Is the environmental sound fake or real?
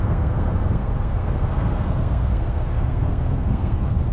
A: fake